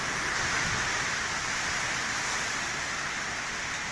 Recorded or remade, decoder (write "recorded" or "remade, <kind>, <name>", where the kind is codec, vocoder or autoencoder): recorded